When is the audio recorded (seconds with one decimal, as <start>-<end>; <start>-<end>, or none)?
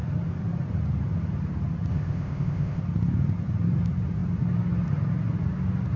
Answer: 0.0-1.9; 2.8-6.0